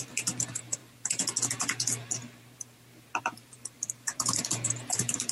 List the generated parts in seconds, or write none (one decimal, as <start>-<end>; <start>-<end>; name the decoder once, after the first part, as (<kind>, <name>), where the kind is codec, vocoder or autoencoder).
0.0-0.8 (vocoder, BigVGAN v2); 3.2-5.3